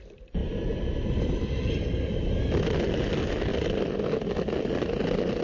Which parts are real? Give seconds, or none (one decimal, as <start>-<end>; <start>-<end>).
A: 0.0-5.4

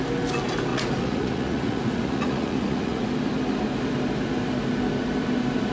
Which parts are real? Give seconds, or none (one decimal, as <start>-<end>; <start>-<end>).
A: 0.0-0.7; 3.0-5.7

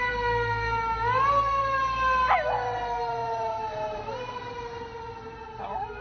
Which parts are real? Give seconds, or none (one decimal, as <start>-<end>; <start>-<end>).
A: 0.0-6.0